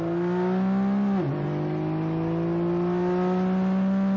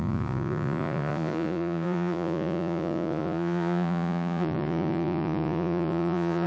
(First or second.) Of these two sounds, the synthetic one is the second